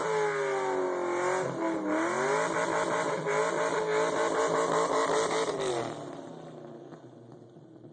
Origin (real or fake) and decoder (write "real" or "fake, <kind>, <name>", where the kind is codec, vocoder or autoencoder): real